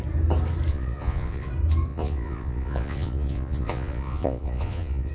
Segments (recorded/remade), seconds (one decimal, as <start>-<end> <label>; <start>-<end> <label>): 0.0-0.7 recorded; 0.7-1.5 remade; 1.5-1.9 recorded; 1.9-5.1 remade